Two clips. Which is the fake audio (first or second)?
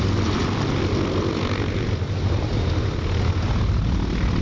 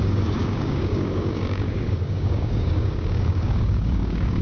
second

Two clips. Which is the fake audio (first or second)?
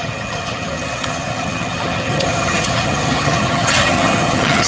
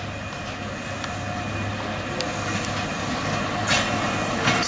first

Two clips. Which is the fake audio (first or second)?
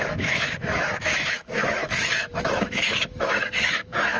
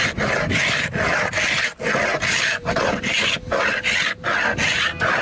first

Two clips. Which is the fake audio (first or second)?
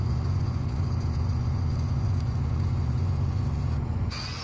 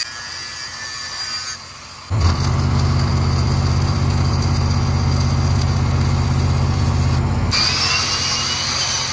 first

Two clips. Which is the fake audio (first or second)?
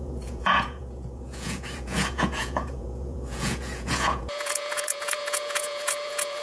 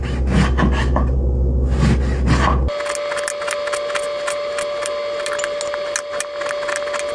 first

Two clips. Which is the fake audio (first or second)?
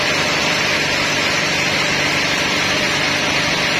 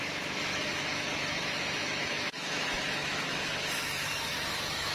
second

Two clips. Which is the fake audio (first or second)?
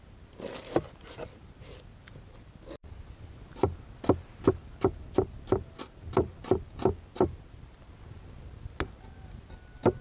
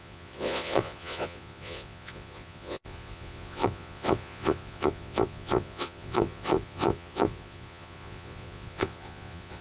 second